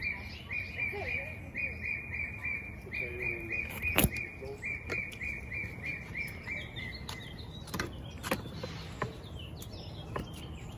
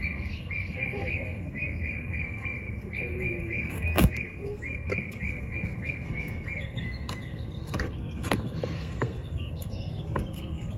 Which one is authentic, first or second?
first